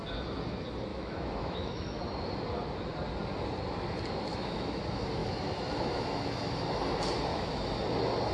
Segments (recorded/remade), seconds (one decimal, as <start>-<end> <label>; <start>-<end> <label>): 0.0-0.9 recorded; 0.9-2.0 remade; 2.0-4.3 recorded; 4.3-4.8 remade; 4.8-5.2 recorded; 5.2-6.8 remade; 6.8-7.3 recorded; 7.3-7.8 remade; 7.8-8.3 recorded

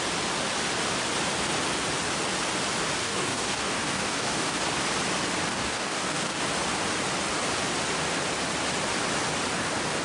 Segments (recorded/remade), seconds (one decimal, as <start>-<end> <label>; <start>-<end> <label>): 0.0-3.0 recorded; 3.0-4.6 remade; 4.6-5.5 recorded; 5.5-6.4 remade; 6.4-10.0 recorded

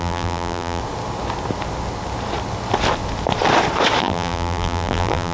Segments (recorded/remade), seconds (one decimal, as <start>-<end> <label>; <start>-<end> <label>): 0.0-0.8 remade; 0.8-4.0 recorded; 4.0-5.3 remade

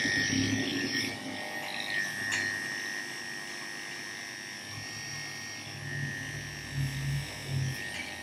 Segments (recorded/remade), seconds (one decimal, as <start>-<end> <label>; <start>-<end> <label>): 0.0-8.2 recorded

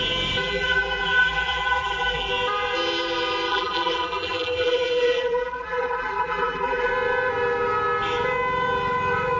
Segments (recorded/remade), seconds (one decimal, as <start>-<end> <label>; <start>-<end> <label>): 0.0-0.4 recorded; 0.4-2.3 remade; 2.3-3.5 recorded; 3.5-6.9 remade; 6.9-9.4 recorded

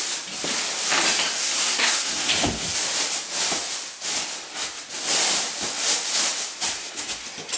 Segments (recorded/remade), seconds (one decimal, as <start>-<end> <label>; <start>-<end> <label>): 0.0-1.4 recorded; 1.4-2.3 remade; 2.3-7.6 recorded